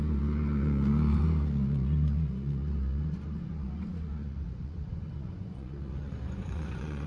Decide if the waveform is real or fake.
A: fake